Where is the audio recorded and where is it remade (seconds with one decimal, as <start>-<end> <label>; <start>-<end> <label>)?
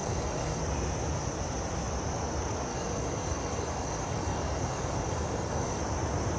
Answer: 0.0-0.6 remade; 0.6-2.7 recorded; 2.7-5.8 remade; 5.8-6.4 recorded